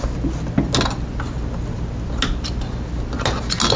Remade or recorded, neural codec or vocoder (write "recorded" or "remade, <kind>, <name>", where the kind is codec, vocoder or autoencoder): recorded